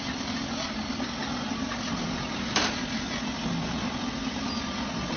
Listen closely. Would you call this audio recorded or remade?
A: recorded